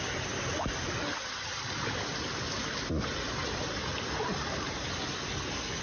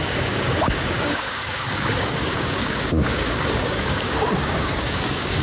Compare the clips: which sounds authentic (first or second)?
first